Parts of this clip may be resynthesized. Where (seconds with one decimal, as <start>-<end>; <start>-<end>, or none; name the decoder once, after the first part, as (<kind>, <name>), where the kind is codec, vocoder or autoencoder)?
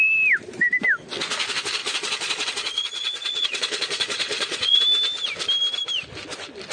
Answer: 1.8-4.8 (vocoder, Vocos)